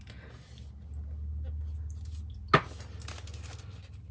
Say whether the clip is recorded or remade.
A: recorded